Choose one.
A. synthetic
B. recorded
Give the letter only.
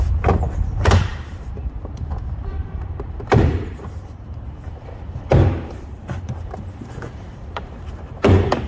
A